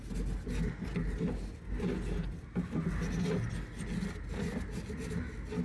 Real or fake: real